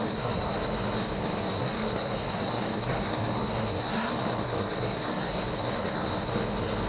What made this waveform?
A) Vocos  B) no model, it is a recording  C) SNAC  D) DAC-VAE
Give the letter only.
C